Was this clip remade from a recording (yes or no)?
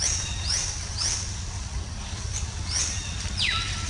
yes